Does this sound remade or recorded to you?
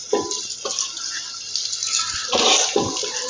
recorded